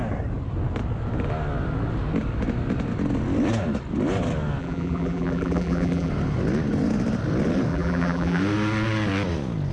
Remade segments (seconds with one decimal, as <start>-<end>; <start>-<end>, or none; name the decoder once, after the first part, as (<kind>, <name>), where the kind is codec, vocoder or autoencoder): 4.6-6.1 (vocoder, BigVGAN v2); 7.7-8.4